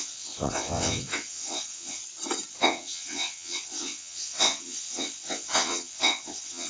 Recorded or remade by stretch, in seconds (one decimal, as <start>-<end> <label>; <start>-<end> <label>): 0.0-2.0 remade; 2.0-2.5 recorded; 2.5-6.7 remade